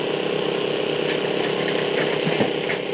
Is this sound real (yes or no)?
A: yes